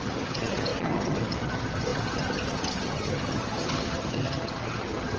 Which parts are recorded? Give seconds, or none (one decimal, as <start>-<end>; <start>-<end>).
none